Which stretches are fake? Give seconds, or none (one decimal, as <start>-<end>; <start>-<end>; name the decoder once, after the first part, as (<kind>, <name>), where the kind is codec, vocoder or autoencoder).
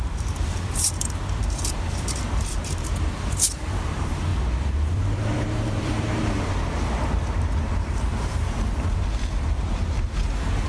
0.0-10.7 (vocoder, BigVGAN v2)